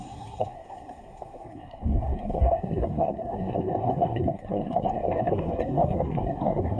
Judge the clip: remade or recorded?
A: remade